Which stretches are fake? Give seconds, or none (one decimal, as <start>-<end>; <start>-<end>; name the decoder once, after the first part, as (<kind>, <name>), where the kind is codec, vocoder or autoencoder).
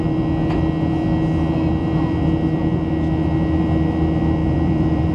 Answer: 4.4-5.1 (vocoder, BigVGAN v2)